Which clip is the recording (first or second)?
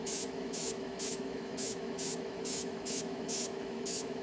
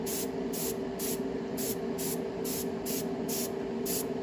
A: second